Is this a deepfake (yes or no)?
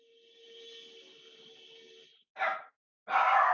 no